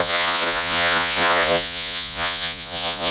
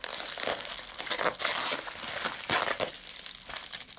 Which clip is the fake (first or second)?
first